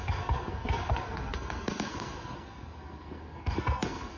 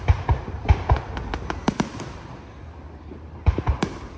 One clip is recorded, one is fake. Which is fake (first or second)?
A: first